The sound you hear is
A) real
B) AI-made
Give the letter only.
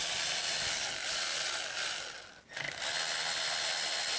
A